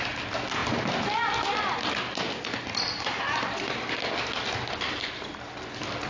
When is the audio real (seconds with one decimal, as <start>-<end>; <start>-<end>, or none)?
0.0-6.1